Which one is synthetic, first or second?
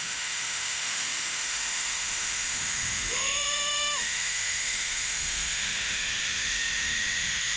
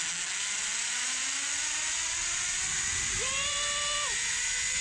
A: first